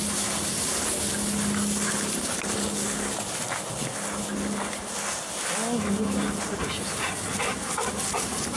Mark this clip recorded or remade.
recorded